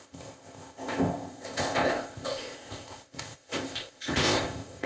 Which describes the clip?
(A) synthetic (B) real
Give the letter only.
A